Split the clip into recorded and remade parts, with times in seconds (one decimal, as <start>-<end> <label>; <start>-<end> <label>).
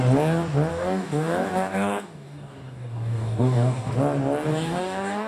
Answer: 0.0-0.7 recorded; 0.7-3.9 remade; 3.9-4.5 recorded; 4.5-5.3 remade